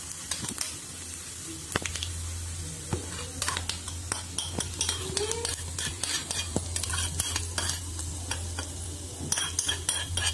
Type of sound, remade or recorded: recorded